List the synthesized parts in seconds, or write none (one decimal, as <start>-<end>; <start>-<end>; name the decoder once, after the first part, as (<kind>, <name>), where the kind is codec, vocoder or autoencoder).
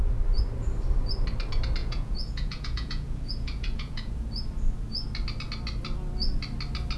1.8-4.1 (vocoder, Vocos)